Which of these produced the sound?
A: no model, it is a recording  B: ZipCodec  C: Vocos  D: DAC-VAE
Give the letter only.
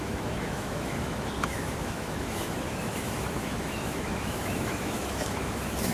D